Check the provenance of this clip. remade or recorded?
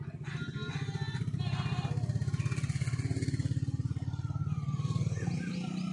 recorded